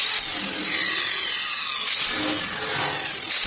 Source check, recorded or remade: recorded